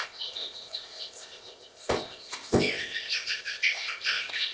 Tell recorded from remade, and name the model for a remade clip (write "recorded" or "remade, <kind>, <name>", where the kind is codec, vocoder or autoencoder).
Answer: remade, codec, ZipCodec